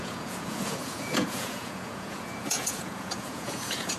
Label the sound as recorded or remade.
remade